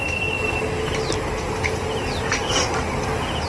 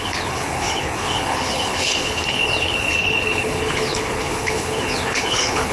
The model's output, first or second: second